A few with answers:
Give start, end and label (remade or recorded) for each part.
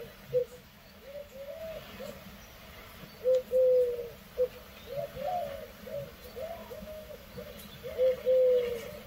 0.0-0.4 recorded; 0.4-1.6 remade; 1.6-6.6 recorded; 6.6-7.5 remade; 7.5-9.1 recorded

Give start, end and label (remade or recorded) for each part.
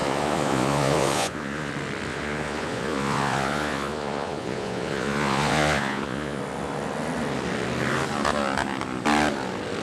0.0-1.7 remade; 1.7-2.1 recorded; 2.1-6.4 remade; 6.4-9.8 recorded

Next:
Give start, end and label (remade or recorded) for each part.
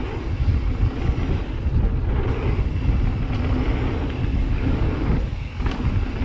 0.0-4.3 recorded; 4.3-5.8 remade; 5.8-6.2 recorded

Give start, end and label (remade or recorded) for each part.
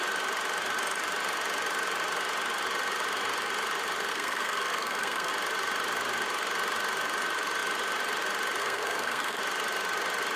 0.0-4.1 recorded; 4.1-5.3 remade; 5.3-8.6 recorded; 8.6-9.4 remade; 9.4-10.4 recorded